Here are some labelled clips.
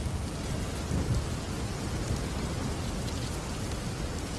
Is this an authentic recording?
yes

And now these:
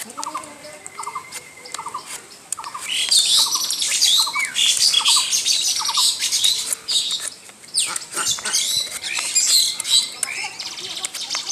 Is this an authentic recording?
yes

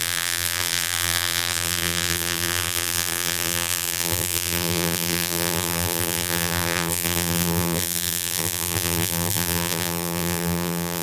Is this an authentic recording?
no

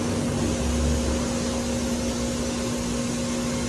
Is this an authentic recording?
yes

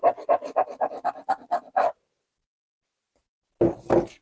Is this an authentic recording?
yes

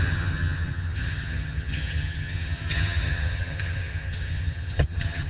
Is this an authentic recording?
no